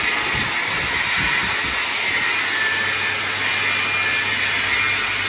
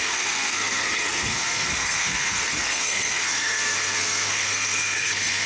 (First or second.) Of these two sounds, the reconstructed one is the second